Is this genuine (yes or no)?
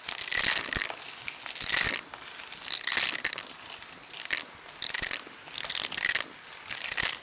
yes